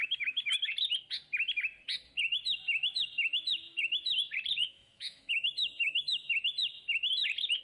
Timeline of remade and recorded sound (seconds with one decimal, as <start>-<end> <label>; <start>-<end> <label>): 0.0-0.7 remade; 0.7-4.6 recorded; 4.6-6.3 remade; 6.3-7.6 recorded